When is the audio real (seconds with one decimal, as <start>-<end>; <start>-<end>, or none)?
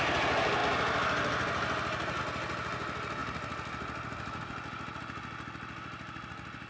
0.0-6.7